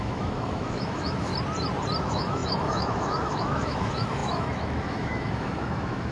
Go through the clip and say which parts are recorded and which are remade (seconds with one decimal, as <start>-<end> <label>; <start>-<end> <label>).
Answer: 0.0-1.3 remade; 1.3-2.0 recorded; 2.0-6.1 remade

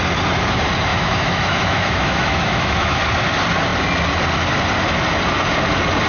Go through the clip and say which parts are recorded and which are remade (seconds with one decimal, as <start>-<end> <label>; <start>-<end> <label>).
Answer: 0.0-0.9 recorded; 0.9-3.0 remade; 3.0-6.1 recorded

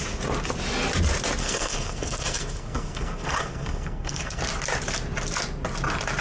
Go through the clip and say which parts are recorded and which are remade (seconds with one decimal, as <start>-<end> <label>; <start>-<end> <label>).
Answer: 0.0-1.4 recorded; 1.4-4.4 remade; 4.4-6.2 recorded

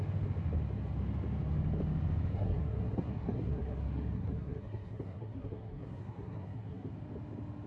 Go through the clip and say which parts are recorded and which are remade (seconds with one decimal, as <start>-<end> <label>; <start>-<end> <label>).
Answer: 0.0-2.3 recorded; 2.3-6.9 remade; 6.9-7.7 recorded

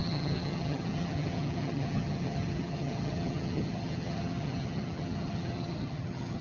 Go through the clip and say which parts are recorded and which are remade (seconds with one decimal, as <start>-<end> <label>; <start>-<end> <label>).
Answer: 0.0-6.4 remade

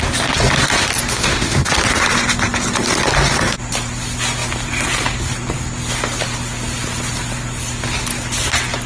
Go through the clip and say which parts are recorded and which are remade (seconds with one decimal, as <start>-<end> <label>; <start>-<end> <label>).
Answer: 0.0-1.1 recorded; 1.1-1.7 remade; 1.7-8.9 recorded

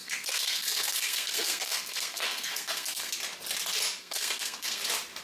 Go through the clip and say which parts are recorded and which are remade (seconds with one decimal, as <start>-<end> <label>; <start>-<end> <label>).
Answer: 0.0-3.1 remade; 3.1-4.0 recorded; 4.0-4.8 remade; 4.8-5.2 recorded